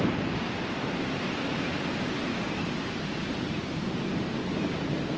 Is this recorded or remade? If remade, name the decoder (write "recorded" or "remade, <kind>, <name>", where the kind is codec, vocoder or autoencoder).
recorded